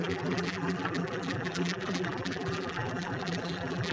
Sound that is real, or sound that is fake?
fake